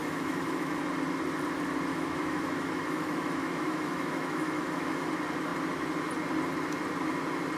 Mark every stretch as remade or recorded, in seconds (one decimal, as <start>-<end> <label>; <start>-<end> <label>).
0.0-0.8 remade; 0.8-1.9 recorded; 1.9-5.1 remade; 5.1-7.6 recorded